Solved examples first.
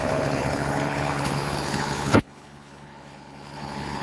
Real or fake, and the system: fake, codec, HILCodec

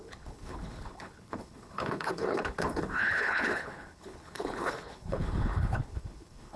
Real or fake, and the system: fake, codec, HILCodec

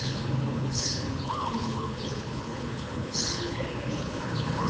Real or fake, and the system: fake, codec, HILCodec